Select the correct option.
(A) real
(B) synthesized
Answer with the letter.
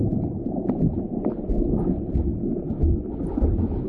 A